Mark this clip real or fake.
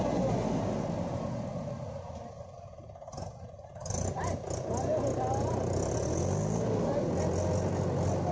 real